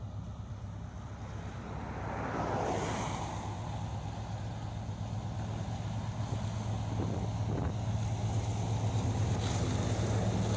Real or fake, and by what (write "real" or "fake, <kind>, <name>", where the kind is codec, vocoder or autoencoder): real